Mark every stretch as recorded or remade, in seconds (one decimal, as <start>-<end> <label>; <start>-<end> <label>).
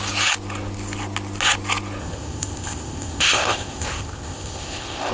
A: 0.0-2.0 recorded; 2.0-5.1 remade